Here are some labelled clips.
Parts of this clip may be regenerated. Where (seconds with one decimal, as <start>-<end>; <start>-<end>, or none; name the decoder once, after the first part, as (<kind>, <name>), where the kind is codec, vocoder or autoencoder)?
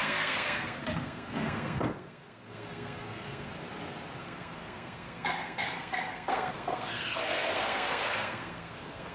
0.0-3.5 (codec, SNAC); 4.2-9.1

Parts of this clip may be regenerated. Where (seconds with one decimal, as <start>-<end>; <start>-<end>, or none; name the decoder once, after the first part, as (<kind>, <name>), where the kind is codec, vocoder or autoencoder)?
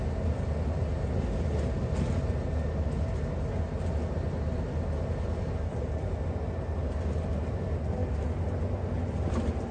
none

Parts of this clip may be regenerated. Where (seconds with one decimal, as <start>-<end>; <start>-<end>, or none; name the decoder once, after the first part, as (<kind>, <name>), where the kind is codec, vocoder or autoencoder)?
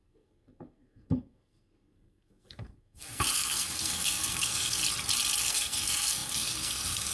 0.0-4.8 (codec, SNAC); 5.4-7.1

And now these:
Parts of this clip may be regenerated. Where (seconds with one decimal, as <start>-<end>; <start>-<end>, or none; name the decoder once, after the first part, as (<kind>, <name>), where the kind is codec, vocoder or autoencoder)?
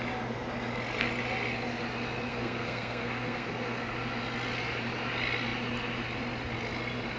2.3-3.9 (codec, SNAC)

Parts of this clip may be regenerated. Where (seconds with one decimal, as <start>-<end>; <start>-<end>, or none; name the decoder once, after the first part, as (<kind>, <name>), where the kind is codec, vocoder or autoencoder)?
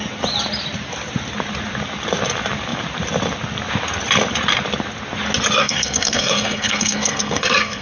5.6-7.8 (codec, SNAC)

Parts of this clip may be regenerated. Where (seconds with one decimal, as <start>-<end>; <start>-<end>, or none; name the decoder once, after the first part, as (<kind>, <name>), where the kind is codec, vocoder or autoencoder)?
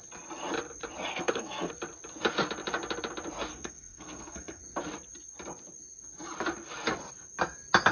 1.1-1.7 (codec, SNAC); 3.5-4.6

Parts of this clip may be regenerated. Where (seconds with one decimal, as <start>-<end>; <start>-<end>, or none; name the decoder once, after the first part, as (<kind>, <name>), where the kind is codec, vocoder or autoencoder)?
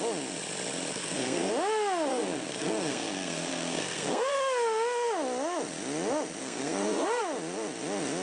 0.9-1.5 (codec, SNAC); 2.1-4.3; 6.4-7.2